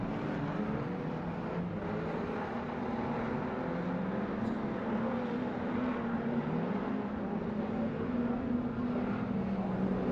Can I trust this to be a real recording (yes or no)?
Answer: yes